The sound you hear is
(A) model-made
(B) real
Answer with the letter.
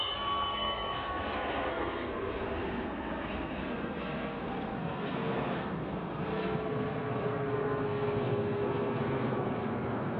A